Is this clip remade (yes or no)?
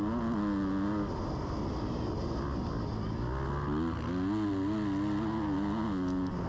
no